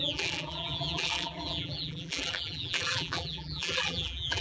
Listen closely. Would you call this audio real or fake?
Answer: fake